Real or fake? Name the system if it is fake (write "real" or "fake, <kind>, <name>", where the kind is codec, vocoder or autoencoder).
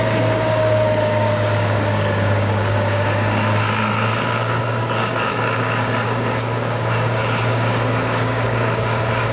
fake, codec, DAC